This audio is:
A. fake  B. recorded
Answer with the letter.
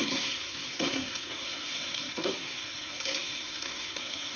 A